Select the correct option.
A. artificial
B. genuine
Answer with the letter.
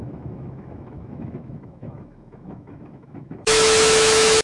A